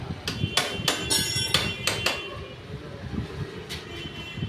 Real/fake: real